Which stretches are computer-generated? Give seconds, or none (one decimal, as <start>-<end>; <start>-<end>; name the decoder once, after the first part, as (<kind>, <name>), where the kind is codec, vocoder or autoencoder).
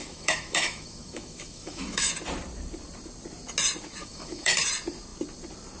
0.0-2.1 (autoencoder, DAC-VAE); 4.0-4.6